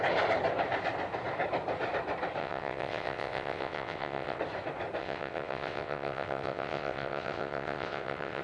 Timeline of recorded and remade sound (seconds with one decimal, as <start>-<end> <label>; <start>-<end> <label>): 0.0-2.4 recorded; 2.4-4.4 remade; 4.4-5.0 recorded; 5.0-8.4 remade